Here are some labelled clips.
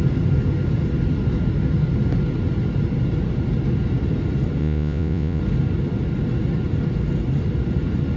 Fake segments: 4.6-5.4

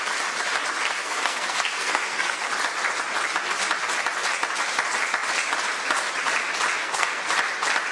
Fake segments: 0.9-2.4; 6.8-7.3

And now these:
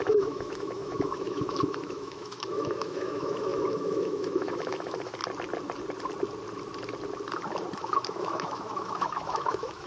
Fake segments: 0.0-5.2; 7.8-9.9

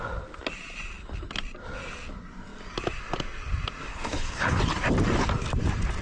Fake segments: 3.9-4.6